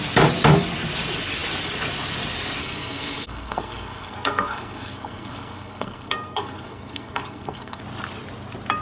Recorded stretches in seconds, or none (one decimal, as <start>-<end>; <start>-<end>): 0.0-2.6; 7.8-8.8